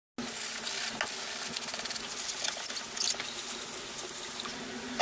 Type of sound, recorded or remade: recorded